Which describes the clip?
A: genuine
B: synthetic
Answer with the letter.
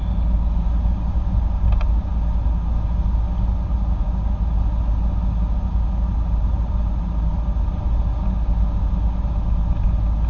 A